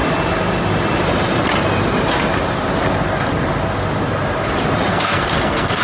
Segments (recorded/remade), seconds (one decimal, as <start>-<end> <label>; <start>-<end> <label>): 0.0-4.9 recorded; 4.9-5.8 remade